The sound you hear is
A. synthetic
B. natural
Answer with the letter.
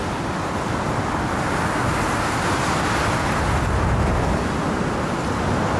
B